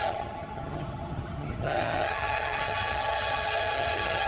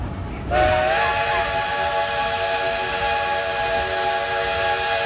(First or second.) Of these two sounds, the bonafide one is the second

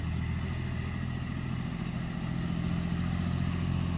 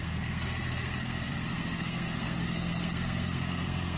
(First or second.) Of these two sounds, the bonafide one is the first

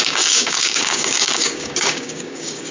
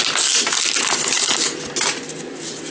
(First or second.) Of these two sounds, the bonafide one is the second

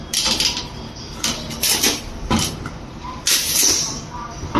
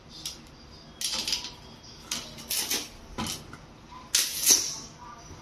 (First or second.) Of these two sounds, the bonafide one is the second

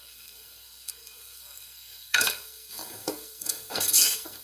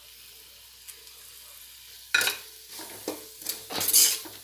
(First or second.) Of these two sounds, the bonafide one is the second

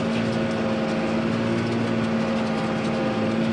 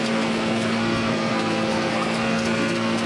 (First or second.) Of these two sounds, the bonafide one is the first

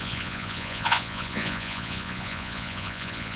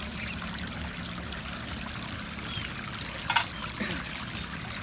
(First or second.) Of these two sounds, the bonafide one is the second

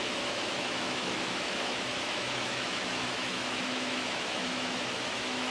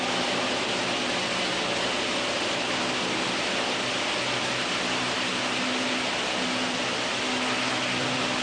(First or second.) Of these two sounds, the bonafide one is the second